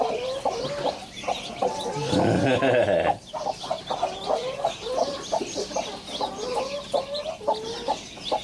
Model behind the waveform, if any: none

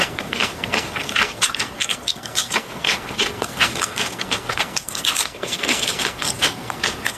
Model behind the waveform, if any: codec, SNAC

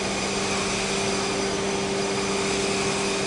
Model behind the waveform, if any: none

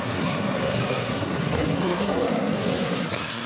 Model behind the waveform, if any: codec, SNAC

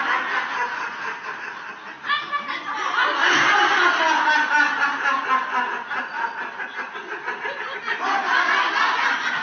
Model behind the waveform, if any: none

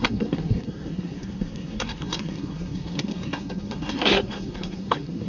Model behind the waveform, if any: codec, SNAC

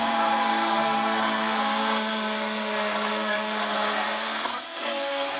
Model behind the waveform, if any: codec, SNAC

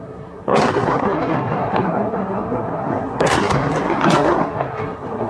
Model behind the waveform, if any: codec, SNAC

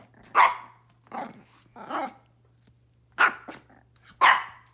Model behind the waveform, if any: none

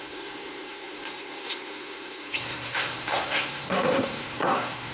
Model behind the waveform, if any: codec, SNAC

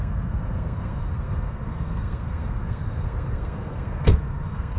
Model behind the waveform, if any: codec, SNAC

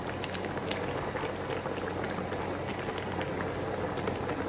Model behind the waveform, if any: none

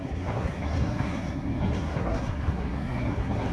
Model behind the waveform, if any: codec, SNAC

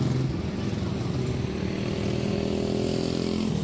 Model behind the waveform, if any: none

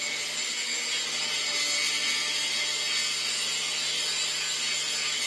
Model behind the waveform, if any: none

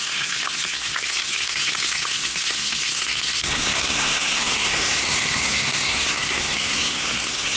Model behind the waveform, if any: codec, SNAC